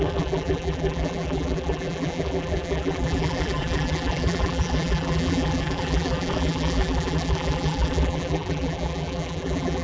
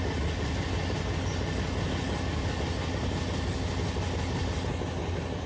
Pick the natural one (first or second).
second